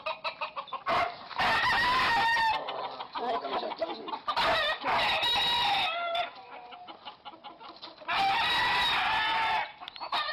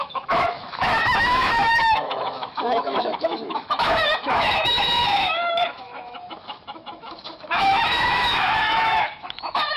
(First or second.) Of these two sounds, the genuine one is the first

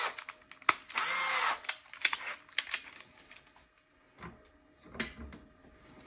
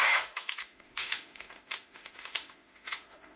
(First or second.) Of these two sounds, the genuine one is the first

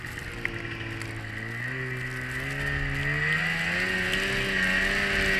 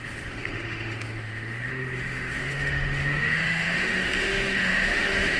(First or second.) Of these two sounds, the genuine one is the first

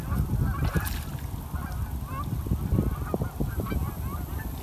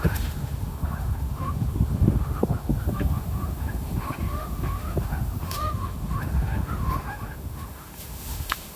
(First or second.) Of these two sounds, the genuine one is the first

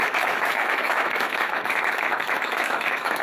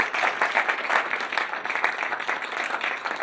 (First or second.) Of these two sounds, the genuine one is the second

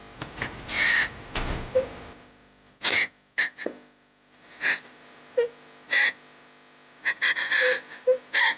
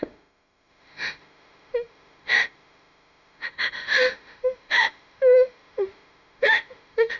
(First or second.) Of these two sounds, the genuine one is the first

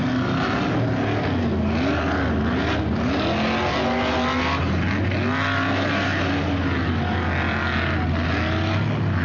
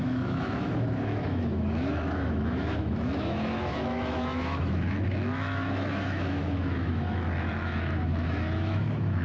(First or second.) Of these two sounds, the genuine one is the first